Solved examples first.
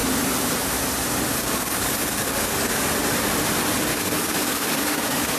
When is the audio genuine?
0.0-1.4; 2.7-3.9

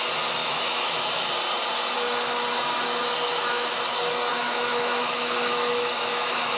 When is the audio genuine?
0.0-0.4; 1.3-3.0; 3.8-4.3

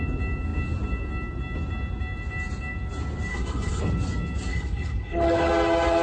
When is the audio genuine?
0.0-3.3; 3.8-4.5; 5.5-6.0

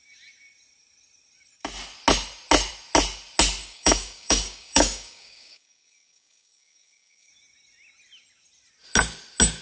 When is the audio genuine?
0.0-3.6; 7.3-9.6

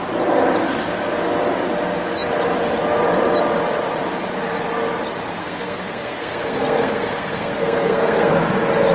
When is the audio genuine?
0.0-5.4; 8.3-8.9